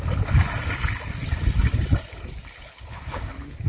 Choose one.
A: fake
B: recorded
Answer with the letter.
B